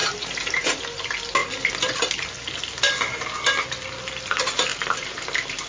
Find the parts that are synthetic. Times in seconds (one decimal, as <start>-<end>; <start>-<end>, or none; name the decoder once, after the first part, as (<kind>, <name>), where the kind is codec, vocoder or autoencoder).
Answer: 0.0-0.8 (vocoder, BigVGAN v2); 4.7-5.3